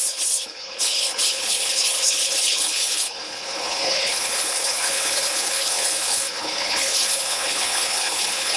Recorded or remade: remade